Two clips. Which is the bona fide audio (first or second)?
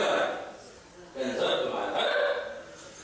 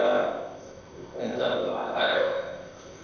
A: first